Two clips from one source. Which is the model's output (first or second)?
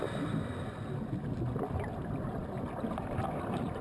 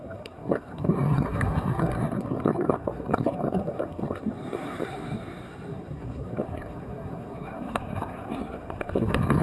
second